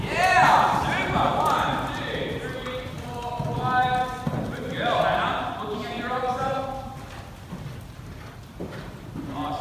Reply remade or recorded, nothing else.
remade